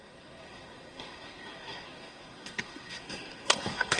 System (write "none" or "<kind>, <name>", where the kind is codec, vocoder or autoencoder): codec, SNAC